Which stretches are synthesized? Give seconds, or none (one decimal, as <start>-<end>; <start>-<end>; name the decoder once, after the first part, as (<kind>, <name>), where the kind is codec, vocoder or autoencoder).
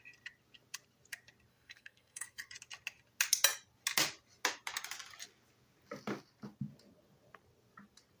1.5-2.5 (codec, SNAC)